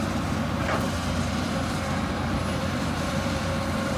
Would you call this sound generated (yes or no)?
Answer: yes